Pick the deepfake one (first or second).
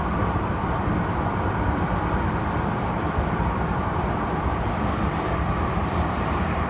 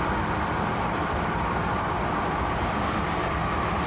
first